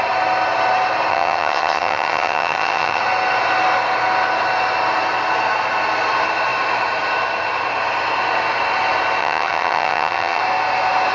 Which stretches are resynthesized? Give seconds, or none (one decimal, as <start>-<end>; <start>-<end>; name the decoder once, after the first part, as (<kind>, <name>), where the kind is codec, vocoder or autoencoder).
1.1-3.0 (vocoder, HiFi-GAN); 9.2-10.4